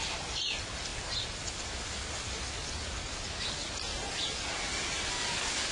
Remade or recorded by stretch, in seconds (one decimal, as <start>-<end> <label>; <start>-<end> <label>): 0.0-5.7 recorded

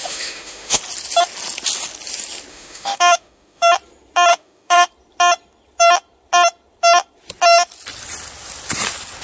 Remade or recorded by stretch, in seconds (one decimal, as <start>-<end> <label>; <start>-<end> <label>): 0.0-0.8 remade; 0.8-2.5 recorded; 2.5-3.7 remade; 3.7-4.3 recorded; 4.3-4.9 remade; 4.9-9.2 recorded

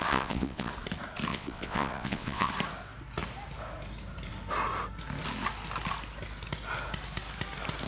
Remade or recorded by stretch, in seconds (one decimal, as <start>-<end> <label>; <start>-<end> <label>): 0.0-0.7 remade; 0.7-1.3 recorded; 1.3-2.5 remade; 2.5-7.9 recorded

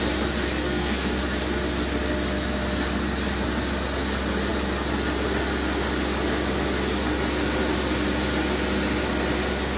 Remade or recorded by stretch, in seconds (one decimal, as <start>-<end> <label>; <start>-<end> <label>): 0.0-0.6 recorded; 0.6-1.2 remade; 1.2-9.8 recorded

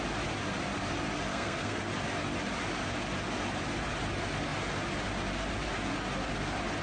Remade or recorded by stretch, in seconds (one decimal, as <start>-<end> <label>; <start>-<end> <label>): 0.0-1.3 recorded; 1.3-1.9 remade; 1.9-6.8 recorded

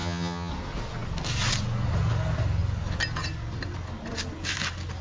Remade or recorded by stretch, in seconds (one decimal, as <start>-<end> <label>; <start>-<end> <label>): 0.0-0.5 remade; 0.5-5.0 recorded

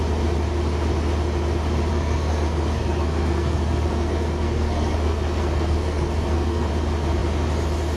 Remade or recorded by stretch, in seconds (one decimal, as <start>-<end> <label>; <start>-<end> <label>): 0.0-1.9 recorded; 1.9-6.7 remade; 6.7-8.0 recorded

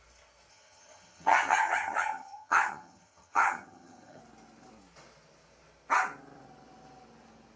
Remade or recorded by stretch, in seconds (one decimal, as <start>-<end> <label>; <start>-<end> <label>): 0.0-0.5 recorded; 0.5-4.2 remade; 4.2-7.6 recorded